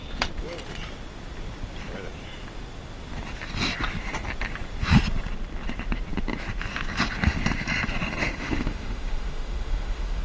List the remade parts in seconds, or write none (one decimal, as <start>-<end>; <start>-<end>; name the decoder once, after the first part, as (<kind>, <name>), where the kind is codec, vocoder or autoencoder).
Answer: 8.2-10.2 (autoencoder, DAC-VAE)